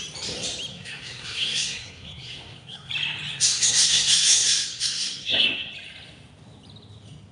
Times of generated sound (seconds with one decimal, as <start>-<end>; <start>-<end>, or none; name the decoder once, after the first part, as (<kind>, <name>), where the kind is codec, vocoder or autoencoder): 0.7-2.9 (codec, SNAC); 3.3-5.7